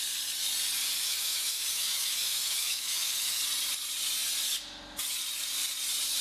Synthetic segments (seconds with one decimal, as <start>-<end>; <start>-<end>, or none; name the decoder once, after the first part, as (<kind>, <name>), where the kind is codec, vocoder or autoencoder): 1.0-3.4 (autoencoder, DAC-VAE)

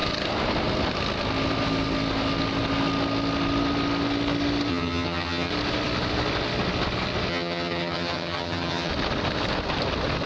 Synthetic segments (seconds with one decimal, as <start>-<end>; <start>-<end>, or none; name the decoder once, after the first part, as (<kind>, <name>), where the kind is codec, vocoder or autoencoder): 4.7-5.5 (vocoder, HiFi-GAN); 7.3-8.9

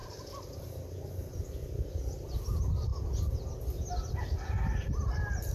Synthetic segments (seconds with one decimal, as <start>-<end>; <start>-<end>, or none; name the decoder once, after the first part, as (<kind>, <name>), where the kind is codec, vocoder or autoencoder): 0.0-0.7 (vocoder, BigVGAN v2)

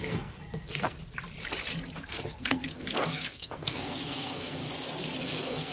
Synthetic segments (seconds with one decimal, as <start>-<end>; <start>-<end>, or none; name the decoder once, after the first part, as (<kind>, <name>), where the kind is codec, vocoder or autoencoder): 0.0-1.0 (codec, SNAC); 2.1-4.6; 5.2-5.7

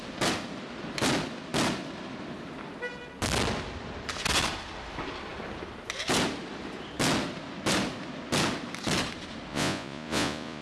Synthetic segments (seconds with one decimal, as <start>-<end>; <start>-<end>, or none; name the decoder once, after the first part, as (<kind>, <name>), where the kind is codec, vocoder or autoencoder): 9.5-10.6 (vocoder, Vocos)

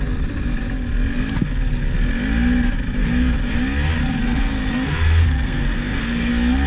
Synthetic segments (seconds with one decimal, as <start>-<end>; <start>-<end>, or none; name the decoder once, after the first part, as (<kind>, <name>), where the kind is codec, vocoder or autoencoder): 4.2-6.3 (codec, SNAC)

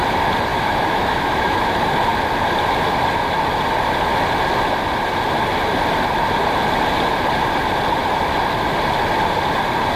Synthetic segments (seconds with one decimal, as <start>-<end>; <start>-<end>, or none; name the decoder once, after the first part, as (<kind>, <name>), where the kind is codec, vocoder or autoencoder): 0.5-1.7 (autoencoder, DAC-VAE)

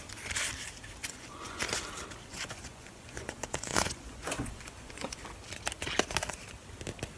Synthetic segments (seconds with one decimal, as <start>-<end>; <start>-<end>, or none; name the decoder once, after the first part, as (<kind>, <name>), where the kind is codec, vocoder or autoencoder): 1.0-1.8 (vocoder, Vocos); 2.3-5.2